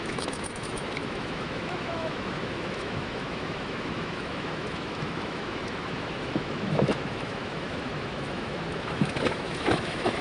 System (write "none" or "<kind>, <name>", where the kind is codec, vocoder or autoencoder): autoencoder, DAC-VAE